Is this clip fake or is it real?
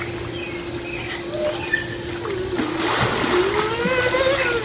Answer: real